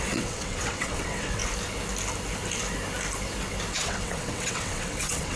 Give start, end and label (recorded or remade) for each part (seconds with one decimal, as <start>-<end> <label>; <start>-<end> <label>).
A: 0.0-1.4 remade; 1.4-3.7 recorded; 3.7-5.4 remade